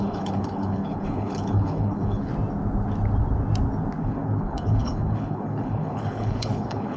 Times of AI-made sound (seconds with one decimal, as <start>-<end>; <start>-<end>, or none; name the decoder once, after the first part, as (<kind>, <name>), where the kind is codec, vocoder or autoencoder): 0.0-2.3 (codec, HILCodec); 4.0-7.0